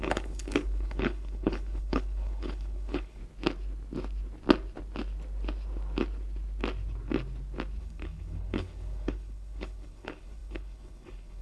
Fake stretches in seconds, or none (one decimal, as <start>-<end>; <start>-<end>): 0.0-3.2; 7.8-11.4